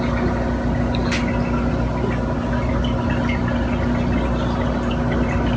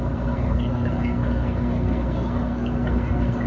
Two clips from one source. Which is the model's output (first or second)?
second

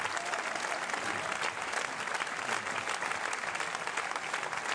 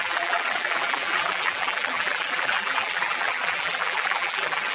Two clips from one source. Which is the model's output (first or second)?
second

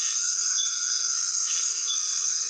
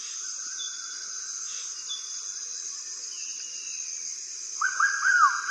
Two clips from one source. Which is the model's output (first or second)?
first